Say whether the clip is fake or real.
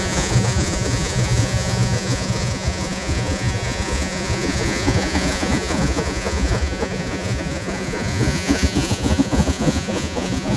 fake